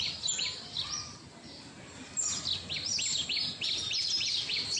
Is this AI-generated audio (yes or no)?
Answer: no